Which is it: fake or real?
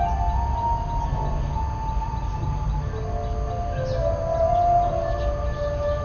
real